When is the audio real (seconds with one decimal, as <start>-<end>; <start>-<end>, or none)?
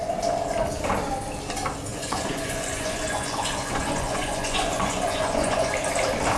0.0-1.9; 5.7-6.4